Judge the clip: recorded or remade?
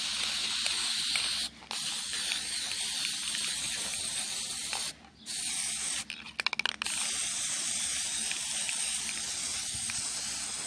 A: recorded